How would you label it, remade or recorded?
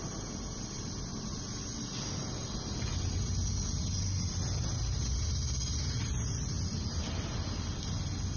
recorded